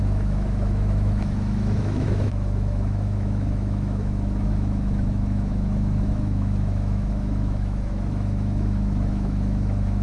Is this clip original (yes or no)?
no